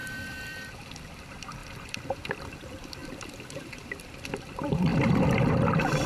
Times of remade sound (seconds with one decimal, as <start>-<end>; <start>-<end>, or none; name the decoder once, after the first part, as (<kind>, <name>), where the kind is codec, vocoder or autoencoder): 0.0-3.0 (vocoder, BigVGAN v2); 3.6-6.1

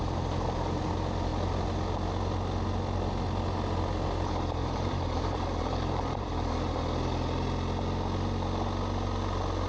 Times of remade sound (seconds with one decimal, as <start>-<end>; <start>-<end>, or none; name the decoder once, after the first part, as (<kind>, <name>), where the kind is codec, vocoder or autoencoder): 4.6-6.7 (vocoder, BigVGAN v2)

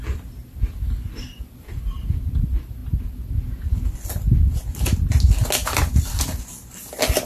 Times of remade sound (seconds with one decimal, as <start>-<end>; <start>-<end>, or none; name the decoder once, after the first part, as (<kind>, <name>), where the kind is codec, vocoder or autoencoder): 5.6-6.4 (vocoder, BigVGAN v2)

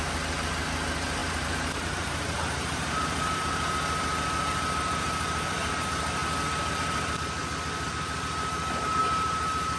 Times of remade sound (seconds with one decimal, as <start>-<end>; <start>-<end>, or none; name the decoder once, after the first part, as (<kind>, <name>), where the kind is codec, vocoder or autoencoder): 0.0-6.2 (vocoder, BigVGAN v2); 6.7-7.4; 7.9-9.8

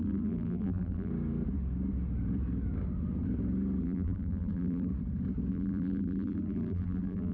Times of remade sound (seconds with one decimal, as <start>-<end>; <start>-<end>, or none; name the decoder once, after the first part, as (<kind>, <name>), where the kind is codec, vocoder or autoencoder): 0.0-1.1 (vocoder, BigVGAN v2); 3.8-4.9; 5.5-7.3

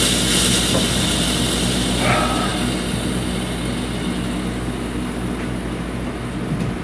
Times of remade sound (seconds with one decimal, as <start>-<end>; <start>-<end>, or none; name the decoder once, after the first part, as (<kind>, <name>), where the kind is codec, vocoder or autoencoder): none